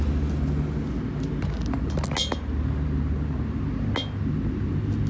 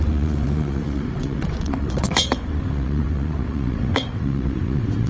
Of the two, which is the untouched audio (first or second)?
first